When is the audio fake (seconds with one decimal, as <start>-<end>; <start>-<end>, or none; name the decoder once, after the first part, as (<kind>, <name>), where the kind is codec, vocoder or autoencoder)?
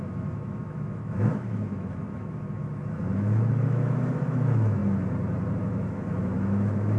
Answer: 0.0-4.8 (autoencoder, DAC-VAE); 5.6-7.0